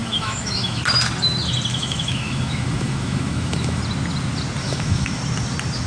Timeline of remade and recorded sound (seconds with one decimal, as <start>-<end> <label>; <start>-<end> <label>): 0.0-0.8 remade; 0.8-1.7 recorded; 1.7-3.8 remade; 3.8-4.6 recorded; 4.6-5.2 remade; 5.2-5.9 recorded

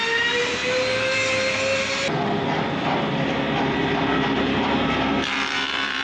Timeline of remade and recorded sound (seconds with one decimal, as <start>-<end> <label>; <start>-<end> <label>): 0.0-0.6 remade; 0.6-4.2 recorded; 4.2-6.0 remade

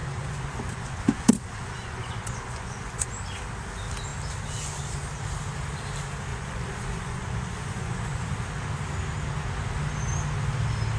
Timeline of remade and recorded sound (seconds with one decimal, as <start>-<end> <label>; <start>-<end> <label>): 0.0-3.1 remade; 3.1-6.3 recorded; 6.3-8.3 remade; 8.3-11.0 recorded